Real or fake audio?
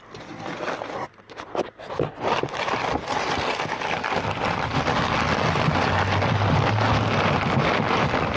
real